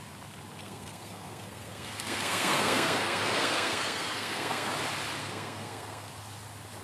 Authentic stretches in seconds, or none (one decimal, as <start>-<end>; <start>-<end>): 0.0-0.6; 4.7-5.2; 6.1-6.8